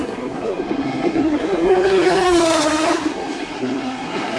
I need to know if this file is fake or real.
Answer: fake